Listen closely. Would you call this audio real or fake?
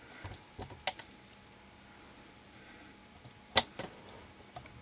real